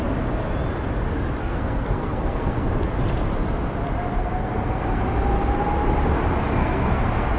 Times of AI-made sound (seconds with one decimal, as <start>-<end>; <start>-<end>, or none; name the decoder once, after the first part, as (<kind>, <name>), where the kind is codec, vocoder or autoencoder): 1.4-2.7 (codec, SNAC); 4.2-5.0; 6.6-7.4

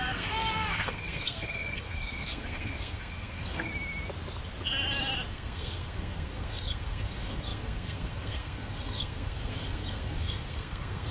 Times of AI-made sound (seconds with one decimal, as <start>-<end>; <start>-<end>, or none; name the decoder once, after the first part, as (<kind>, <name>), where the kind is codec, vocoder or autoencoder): 0.0-3.7 (codec, SNAC); 5.3-11.1

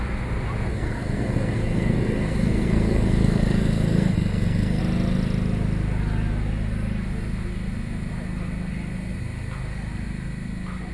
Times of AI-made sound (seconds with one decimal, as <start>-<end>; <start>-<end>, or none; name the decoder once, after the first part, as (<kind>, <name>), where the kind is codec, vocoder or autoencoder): 0.7-4.8 (codec, SNAC)

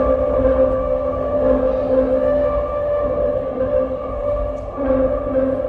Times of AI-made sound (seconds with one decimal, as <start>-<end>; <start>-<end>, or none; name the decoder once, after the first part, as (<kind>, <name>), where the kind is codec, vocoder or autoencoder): 0.5-1.3 (codec, SNAC)

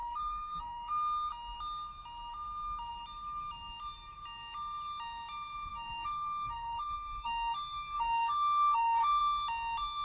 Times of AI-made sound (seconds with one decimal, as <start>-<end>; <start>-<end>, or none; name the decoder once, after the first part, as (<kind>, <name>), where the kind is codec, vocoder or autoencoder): 0.0-0.9 (codec, SNAC); 5.7-9.2

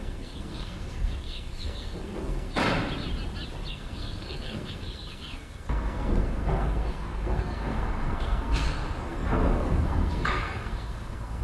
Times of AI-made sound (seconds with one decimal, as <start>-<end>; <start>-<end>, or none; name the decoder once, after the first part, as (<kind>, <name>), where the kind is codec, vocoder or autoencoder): 0.0-2.6 (codec, SNAC); 3.7-11.4